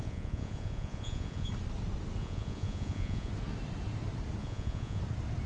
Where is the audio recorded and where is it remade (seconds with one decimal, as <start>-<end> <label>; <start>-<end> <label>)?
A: 0.0-1.5 remade; 1.5-2.2 recorded; 2.2-3.3 remade; 3.3-4.4 recorded; 4.4-5.0 remade; 5.0-5.5 recorded